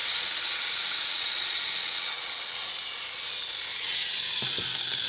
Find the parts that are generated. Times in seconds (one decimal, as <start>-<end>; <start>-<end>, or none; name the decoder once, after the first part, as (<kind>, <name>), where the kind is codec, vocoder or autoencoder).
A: 0.0-2.7 (vocoder, WaveNeXt); 3.7-4.4